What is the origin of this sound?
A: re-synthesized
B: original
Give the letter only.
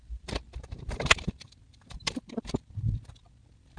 A